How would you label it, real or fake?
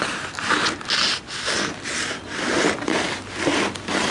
real